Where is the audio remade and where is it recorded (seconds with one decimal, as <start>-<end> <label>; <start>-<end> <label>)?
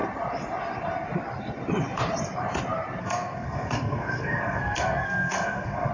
0.0-3.0 recorded; 3.0-5.9 remade